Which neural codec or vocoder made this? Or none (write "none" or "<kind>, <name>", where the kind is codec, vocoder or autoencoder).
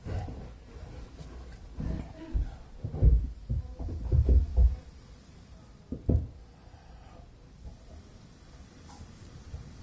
none